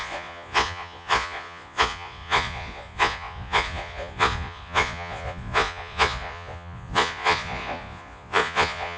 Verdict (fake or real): fake